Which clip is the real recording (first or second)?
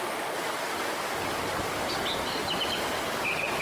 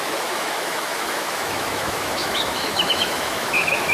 first